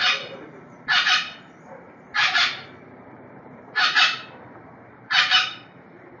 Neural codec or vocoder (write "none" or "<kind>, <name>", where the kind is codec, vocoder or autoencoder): vocoder, BigVGAN v2